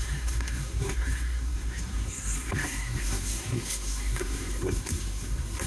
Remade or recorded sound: remade